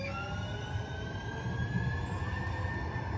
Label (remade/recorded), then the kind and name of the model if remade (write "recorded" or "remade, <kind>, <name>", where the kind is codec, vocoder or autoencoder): recorded